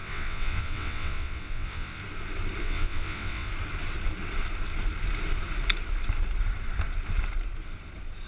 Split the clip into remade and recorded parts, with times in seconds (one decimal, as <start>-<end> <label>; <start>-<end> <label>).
0.0-2.0 remade; 2.0-2.6 recorded; 2.6-3.5 remade; 3.5-8.3 recorded

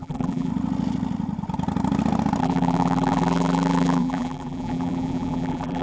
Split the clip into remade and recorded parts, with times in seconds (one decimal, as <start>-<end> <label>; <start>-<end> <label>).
0.0-0.5 remade; 0.5-2.4 recorded; 2.4-5.8 remade

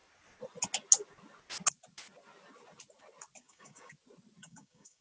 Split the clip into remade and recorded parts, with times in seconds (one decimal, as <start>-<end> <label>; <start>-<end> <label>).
0.0-3.4 recorded; 3.4-3.9 remade; 3.9-4.4 recorded; 4.4-5.0 remade

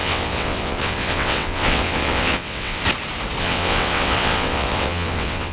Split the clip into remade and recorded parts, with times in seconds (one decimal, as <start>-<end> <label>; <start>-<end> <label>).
0.0-2.8 remade; 2.8-3.4 recorded; 3.4-5.5 remade

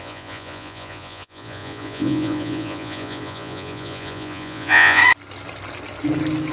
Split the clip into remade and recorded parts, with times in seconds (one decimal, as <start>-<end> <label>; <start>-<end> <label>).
0.0-5.0 remade; 5.0-6.5 recorded